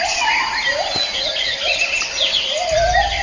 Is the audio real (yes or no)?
yes